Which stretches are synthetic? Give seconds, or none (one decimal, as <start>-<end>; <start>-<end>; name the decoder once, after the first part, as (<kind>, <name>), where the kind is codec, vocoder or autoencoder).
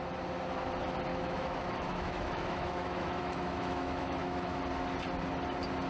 1.1-4.6 (autoencoder, DAC-VAE)